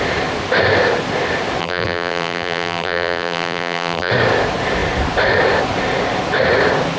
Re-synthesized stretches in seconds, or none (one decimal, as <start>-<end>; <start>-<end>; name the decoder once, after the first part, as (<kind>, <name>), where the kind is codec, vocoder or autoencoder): 1.6-4.1 (vocoder, BigVGAN v2)

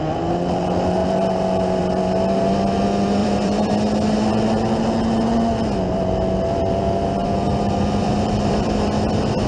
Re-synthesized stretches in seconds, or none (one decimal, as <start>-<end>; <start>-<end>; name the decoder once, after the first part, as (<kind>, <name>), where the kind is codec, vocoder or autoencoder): 3.2-3.7 (vocoder, BigVGAN v2); 7.2-8.9